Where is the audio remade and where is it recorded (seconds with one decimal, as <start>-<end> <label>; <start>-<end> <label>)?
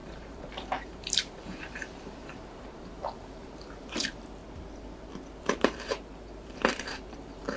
0.0-4.4 remade; 4.4-5.4 recorded; 5.4-7.6 remade